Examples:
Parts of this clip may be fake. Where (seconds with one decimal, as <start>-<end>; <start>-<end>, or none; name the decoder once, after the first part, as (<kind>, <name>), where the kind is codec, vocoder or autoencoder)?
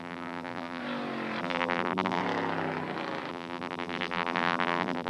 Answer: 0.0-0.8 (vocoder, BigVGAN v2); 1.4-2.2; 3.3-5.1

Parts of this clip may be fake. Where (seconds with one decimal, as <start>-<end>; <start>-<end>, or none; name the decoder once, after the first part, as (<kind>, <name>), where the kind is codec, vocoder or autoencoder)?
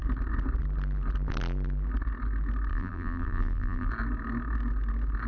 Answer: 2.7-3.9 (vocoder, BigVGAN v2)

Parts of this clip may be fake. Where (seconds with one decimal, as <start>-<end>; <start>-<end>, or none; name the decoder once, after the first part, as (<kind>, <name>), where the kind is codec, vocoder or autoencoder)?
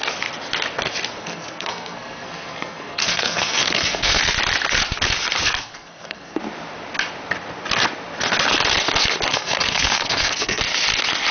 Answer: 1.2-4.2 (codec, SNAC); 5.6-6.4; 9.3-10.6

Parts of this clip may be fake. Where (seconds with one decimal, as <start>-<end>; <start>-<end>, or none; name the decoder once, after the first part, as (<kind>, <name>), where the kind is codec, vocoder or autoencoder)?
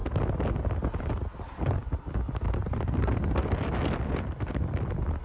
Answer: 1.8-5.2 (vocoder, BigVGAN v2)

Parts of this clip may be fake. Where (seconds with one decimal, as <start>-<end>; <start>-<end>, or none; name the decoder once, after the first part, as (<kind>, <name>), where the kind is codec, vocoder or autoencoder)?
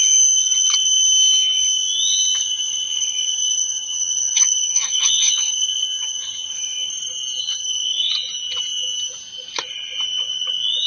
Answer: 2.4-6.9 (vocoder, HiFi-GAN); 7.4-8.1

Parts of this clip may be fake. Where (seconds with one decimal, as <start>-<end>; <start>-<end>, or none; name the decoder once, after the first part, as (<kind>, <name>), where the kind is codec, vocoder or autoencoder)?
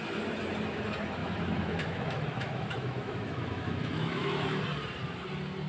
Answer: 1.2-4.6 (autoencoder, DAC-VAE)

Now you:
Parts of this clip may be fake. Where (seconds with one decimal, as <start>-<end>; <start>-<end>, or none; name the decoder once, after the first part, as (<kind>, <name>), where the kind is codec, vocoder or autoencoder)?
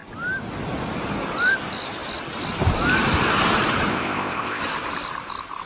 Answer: 3.9-4.6 (codec, ZipCodec)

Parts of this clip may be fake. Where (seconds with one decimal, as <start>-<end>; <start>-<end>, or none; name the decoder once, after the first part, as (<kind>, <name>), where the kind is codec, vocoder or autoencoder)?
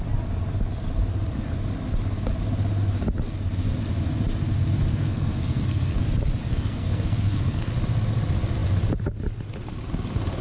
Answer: 4.9-6.0 (codec, SNAC); 6.4-7.7